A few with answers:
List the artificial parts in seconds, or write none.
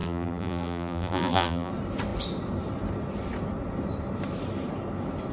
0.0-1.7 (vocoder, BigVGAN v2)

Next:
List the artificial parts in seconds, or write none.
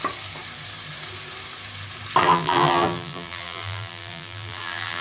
2.2-5.0 (vocoder, BigVGAN v2)